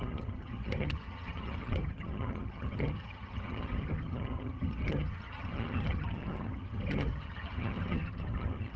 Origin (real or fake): fake